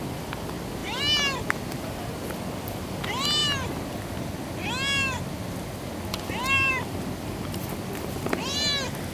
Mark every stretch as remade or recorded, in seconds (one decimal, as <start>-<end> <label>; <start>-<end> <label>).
0.0-9.1 recorded